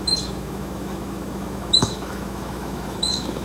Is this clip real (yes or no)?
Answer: no